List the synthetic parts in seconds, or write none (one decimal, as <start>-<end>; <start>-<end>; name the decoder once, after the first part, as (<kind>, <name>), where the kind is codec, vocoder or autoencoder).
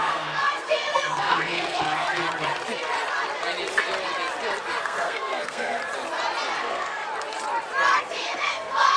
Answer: 0.0-2.2 (codec, SNAC); 4.8-5.8; 6.6-7.0; 8.0-9.0